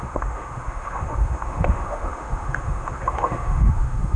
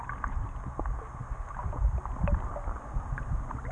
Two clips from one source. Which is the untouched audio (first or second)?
second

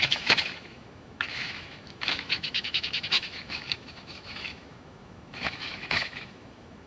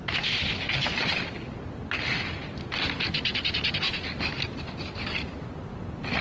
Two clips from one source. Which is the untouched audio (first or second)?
second